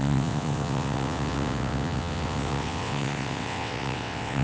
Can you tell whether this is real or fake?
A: fake